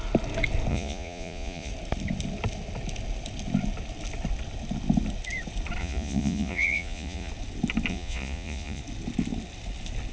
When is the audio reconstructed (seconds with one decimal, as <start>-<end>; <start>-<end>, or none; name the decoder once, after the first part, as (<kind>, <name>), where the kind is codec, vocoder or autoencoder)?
0.7-1.7 (vocoder, Vocos); 5.8-7.3; 7.9-8.8

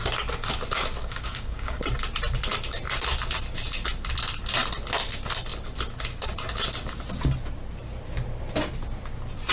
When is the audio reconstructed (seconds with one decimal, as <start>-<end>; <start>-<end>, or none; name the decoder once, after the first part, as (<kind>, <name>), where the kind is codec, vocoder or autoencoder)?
1.0-1.8 (codec, DAC)

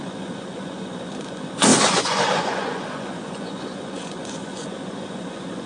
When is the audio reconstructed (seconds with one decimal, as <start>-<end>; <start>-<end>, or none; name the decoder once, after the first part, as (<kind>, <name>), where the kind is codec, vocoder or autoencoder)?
0.0-5.7 (vocoder, Vocos)